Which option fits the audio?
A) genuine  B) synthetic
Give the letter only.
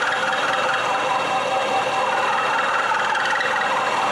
A